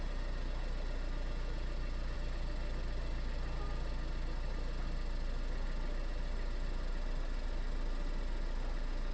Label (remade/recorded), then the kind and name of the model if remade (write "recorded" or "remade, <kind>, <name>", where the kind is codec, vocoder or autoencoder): recorded